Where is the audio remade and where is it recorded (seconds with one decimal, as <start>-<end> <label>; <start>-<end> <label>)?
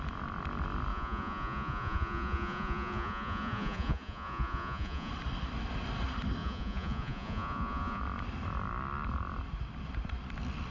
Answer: 0.0-0.9 recorded; 0.9-5.1 remade; 5.1-6.4 recorded; 6.4-8.0 remade; 8.0-10.7 recorded